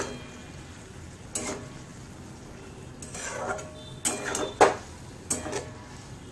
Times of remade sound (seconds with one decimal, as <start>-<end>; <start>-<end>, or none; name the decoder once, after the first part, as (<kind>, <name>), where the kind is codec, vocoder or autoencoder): none